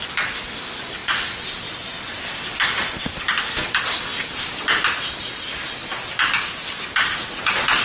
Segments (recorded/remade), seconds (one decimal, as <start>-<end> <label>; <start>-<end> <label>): 0.0-7.8 recorded

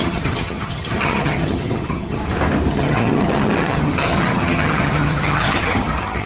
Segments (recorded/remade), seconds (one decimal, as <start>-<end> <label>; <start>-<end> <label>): 0.0-2.2 remade; 2.2-2.7 recorded; 2.7-6.3 remade